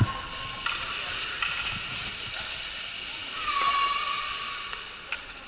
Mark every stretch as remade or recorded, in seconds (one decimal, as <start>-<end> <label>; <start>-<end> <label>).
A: 0.0-5.5 recorded